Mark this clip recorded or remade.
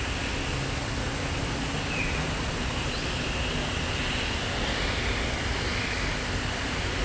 recorded